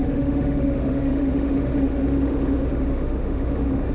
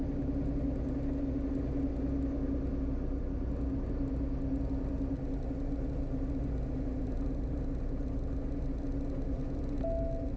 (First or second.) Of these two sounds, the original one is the second